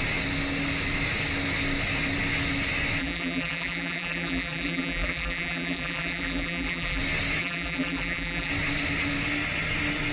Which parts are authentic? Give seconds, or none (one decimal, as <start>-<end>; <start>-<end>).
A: 0.0-3.0; 7.0-7.4; 8.5-10.1